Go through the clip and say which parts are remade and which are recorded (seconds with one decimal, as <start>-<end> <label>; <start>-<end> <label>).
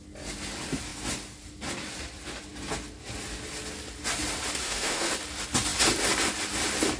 0.0-4.6 recorded; 4.6-5.1 remade; 5.1-7.0 recorded